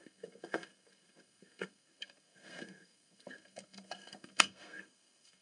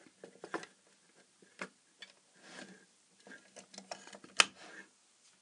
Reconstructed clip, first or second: first